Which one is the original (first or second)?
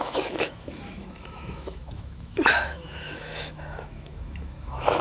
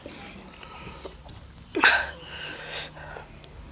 second